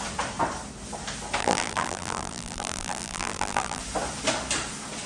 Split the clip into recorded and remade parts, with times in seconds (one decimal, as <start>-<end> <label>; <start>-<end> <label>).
0.0-1.4 recorded; 1.4-3.8 remade; 3.8-5.1 recorded